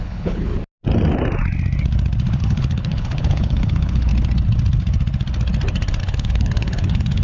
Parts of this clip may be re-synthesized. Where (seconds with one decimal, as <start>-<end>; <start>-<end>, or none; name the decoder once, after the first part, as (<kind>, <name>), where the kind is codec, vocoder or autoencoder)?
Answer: 0.0-0.5 (codec, HILCodec); 2.4-4.1; 6.0-7.2